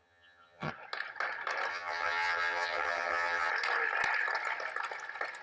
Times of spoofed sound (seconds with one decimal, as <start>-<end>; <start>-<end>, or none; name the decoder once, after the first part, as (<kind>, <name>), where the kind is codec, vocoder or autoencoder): 0.0-0.7 (vocoder, HiFi-GAN); 1.7-3.5